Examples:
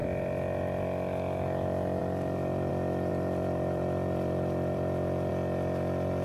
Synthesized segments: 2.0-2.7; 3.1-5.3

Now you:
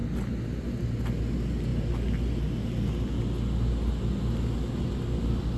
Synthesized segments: none

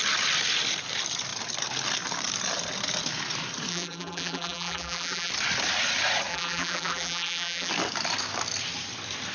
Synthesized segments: 3.7-5.3; 6.3-7.7

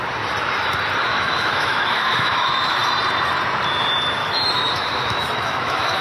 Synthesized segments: 1.1-2.9; 4.2-6.0

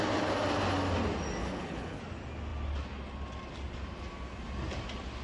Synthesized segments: 1.4-2.0

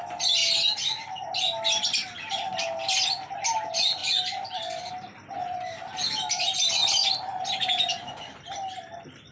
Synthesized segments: none

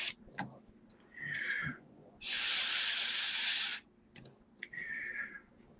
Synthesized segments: 1.6-2.6